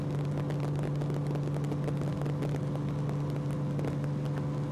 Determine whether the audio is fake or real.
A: real